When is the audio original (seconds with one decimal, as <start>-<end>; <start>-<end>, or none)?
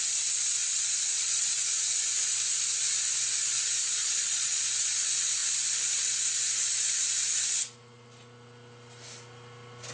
0.0-0.7; 1.5-4.0; 4.6-9.9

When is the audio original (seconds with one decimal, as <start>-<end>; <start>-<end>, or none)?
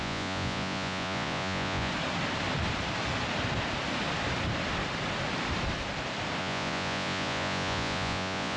1.9-6.4